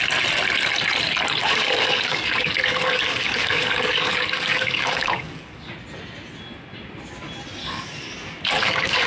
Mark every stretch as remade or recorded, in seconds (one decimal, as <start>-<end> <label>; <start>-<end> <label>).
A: 0.0-1.4 recorded; 1.4-5.7 remade; 5.7-7.6 recorded; 7.6-9.1 remade